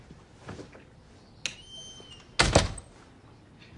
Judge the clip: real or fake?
real